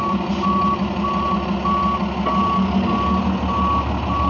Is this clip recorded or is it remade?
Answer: recorded